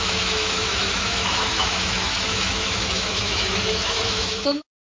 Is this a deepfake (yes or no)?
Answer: yes